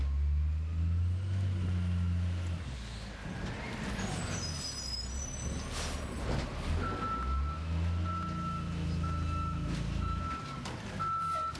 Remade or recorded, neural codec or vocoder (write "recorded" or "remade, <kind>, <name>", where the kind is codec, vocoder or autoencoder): recorded